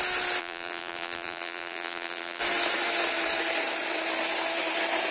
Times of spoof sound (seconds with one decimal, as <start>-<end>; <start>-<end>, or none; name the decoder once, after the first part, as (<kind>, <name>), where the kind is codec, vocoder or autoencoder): 0.4-2.4 (vocoder, BigVGAN v2)